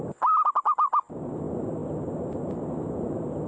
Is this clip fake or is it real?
real